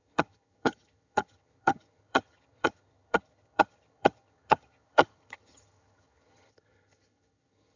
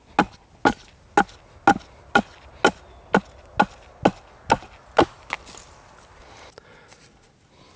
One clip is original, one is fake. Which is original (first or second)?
second